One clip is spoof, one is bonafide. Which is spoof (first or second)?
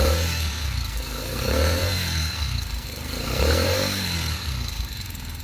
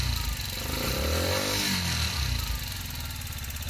first